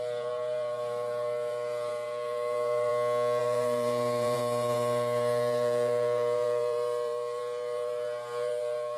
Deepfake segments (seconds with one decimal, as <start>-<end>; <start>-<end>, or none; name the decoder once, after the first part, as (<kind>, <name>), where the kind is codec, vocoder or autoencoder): 0.0-2.9 (vocoder, BigVGAN v2); 3.4-9.0